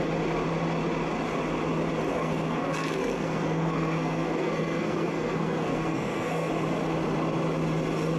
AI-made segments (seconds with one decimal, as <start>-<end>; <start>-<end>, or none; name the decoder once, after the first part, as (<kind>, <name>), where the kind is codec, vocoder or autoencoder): 2.1-6.5 (codec, SNAC)

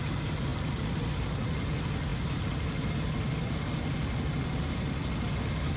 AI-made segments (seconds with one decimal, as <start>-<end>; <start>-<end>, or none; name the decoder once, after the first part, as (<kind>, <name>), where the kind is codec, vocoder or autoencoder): none

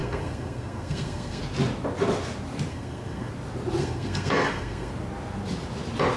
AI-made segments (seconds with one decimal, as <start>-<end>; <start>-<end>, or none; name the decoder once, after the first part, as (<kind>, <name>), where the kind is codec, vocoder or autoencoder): 0.0-1.4 (codec, SNAC); 2.7-3.3; 3.8-4.9

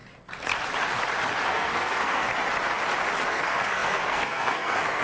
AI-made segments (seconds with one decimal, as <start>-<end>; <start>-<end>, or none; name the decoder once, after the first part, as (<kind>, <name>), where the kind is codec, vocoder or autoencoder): 1.5-2.3 (codec, SNAC); 3.3-5.0

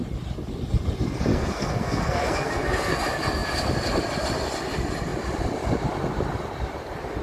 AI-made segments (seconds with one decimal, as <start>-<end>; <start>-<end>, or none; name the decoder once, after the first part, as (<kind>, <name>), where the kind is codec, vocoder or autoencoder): 1.3-3.0 (codec, SNAC)

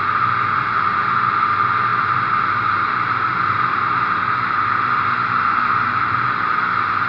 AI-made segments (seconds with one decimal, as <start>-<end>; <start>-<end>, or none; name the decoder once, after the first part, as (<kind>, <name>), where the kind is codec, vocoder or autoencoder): none

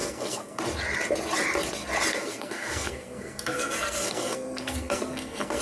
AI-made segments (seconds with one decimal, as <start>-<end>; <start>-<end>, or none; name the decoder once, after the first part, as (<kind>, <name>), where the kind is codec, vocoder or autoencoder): 0.0-0.6 (codec, SNAC); 2.1-5.6

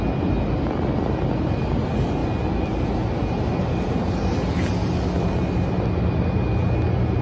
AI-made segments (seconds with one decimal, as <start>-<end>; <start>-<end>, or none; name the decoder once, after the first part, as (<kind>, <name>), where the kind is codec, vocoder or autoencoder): none